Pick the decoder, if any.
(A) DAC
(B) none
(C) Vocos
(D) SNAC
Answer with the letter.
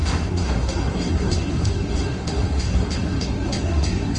D